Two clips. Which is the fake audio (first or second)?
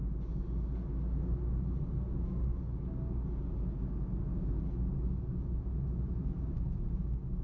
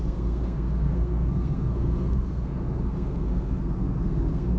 second